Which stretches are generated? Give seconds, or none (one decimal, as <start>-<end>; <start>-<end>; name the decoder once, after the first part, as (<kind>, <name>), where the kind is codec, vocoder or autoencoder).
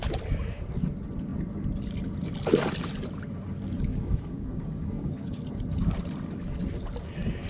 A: 3.9-5.4 (codec, DAC)